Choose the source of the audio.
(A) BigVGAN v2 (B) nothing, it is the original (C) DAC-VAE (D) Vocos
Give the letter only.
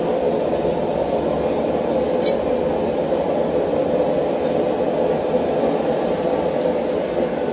B